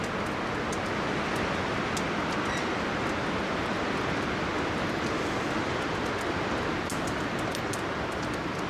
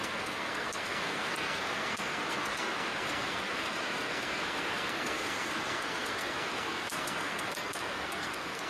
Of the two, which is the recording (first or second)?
first